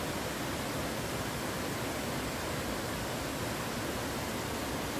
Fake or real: real